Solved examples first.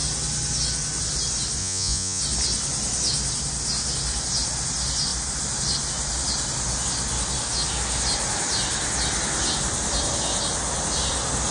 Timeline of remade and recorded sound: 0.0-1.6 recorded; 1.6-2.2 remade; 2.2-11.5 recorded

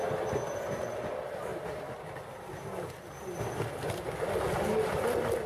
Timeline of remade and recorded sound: 0.0-5.5 recorded

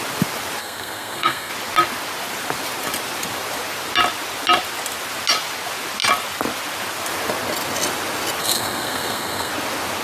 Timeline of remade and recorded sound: 0.0-0.6 recorded; 0.6-1.5 remade; 1.5-8.4 recorded; 8.4-9.5 remade; 9.5-10.0 recorded

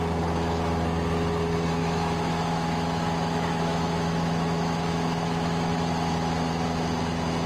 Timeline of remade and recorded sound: 0.0-1.8 recorded; 1.8-5.7 remade; 5.7-7.5 recorded

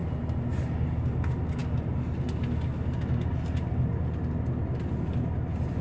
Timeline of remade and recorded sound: 0.0-5.8 recorded

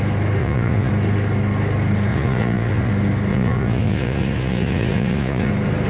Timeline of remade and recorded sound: 0.0-0.4 recorded; 0.4-0.9 remade; 0.9-2.1 recorded; 2.1-2.9 remade; 2.9-3.3 recorded; 3.3-5.5 remade; 5.5-5.9 recorded

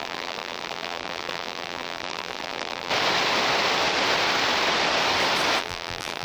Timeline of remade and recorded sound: 0.0-2.9 remade; 2.9-5.6 recorded; 5.6-6.2 remade

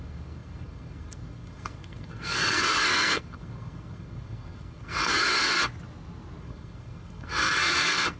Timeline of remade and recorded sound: 0.0-5.6 remade; 5.6-6.4 recorded; 6.4-8.2 remade